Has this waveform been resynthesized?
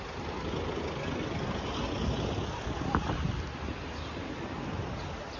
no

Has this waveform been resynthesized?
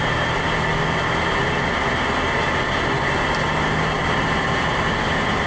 no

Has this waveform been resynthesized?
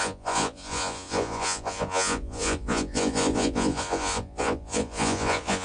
yes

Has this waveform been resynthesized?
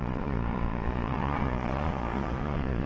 yes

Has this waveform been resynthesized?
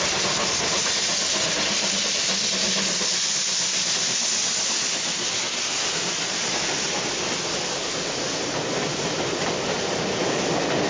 no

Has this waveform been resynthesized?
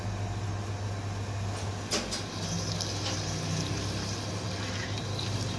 no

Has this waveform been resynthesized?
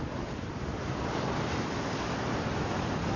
no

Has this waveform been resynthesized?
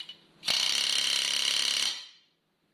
no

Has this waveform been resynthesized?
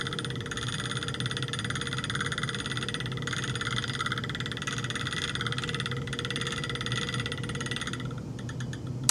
no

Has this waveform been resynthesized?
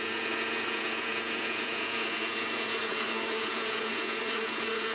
yes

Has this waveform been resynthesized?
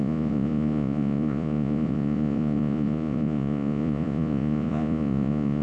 yes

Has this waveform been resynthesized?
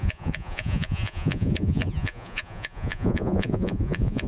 yes